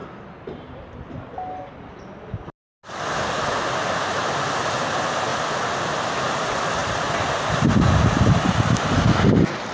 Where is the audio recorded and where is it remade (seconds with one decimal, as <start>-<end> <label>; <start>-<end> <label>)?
0.0-9.7 recorded